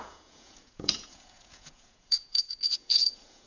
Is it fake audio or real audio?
fake